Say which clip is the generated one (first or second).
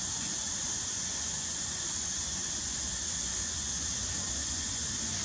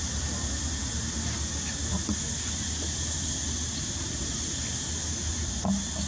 first